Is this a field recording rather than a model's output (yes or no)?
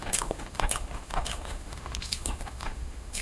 no